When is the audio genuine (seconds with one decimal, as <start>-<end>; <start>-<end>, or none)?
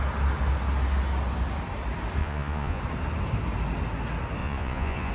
0.0-2.2; 2.8-4.4